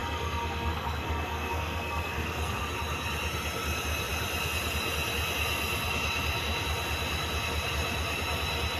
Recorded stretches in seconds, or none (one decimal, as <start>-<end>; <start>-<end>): 2.6-8.8

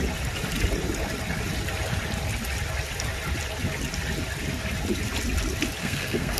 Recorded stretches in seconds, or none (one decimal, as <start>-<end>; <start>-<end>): 0.0-5.8